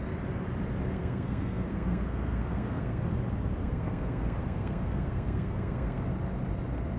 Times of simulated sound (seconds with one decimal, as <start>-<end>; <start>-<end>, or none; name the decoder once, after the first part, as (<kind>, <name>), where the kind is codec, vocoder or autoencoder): 0.8-3.0 (codec, SNAC); 3.6-6.1